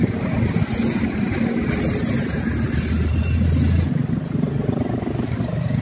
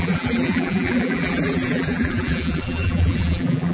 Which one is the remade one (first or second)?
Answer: second